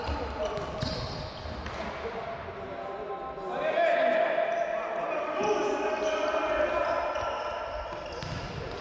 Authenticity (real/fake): real